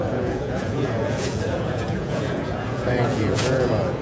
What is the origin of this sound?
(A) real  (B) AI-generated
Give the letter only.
B